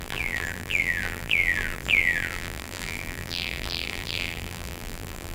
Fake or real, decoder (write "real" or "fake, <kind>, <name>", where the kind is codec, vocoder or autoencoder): fake, vocoder, BigVGAN v2